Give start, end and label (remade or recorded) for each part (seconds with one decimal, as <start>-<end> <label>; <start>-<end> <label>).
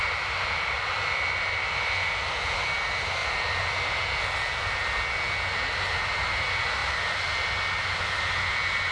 0.0-8.9 recorded